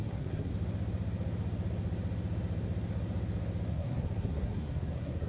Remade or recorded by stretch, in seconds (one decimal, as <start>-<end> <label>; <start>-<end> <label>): 0.0-0.5 remade; 0.5-3.7 recorded; 3.7-5.3 remade